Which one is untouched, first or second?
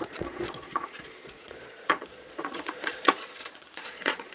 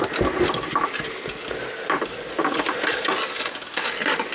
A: second